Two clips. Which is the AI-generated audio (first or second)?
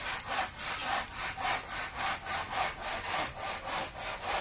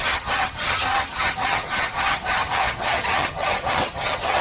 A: second